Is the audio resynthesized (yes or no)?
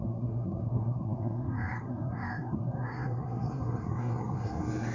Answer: yes